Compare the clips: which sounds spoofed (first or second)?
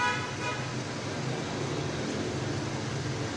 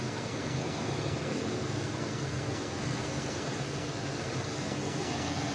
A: second